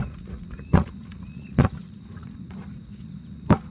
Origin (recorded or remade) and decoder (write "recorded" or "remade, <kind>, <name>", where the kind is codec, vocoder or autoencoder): remade, vocoder, Vocos